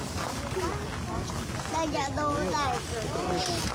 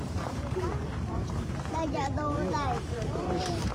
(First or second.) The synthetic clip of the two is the second